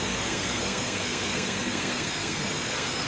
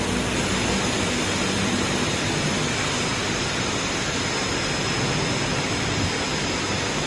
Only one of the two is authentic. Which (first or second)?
second